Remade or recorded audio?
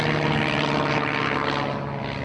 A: recorded